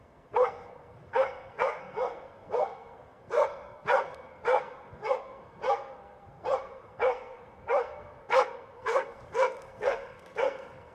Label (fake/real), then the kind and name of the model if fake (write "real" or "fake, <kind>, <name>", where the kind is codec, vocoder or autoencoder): fake, codec, SNAC